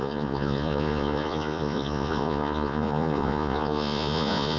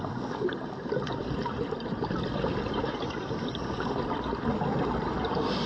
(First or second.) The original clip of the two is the second